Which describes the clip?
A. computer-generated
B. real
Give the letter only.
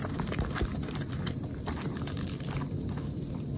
A